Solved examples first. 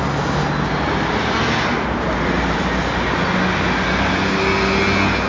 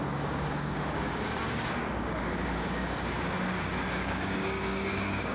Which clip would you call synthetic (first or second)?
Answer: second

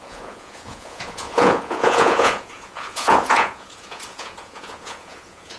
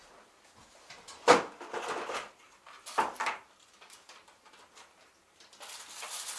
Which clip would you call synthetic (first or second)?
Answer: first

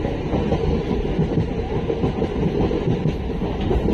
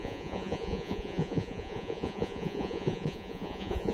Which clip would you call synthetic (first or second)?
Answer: second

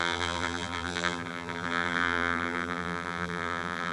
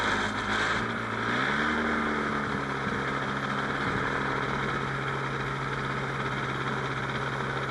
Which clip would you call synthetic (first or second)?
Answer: first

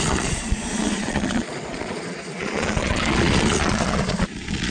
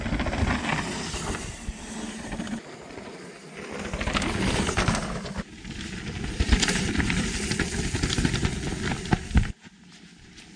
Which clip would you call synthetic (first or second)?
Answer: first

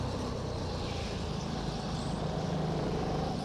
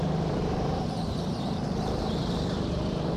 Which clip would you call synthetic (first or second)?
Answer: second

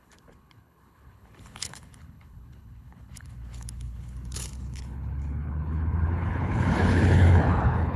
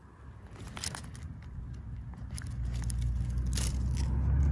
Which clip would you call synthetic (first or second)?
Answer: first